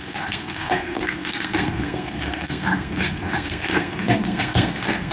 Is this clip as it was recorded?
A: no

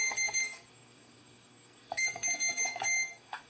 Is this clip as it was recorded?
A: no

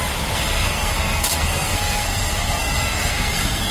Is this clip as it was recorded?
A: no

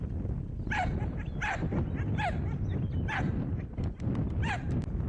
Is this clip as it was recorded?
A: yes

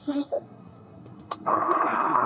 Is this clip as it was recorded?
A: no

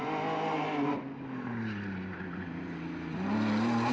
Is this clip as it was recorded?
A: yes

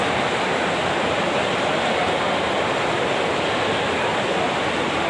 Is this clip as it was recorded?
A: yes